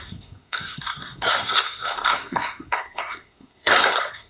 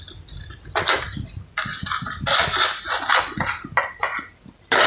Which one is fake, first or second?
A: first